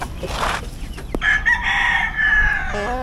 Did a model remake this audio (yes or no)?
no